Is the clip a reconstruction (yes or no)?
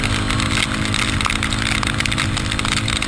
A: no